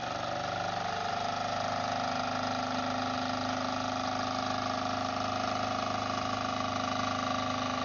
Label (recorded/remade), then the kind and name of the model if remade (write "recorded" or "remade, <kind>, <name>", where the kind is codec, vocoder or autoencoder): recorded